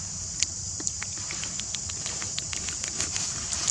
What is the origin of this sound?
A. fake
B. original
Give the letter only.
B